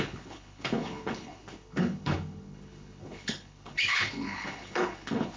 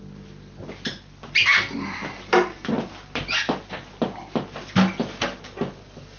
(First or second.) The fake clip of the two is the first